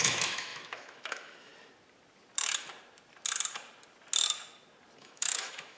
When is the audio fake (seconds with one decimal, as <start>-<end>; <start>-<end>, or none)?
0.0-1.5; 5.0-5.8